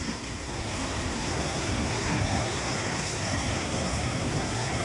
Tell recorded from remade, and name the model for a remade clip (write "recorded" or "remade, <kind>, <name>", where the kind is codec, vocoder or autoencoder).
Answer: remade, codec, SNAC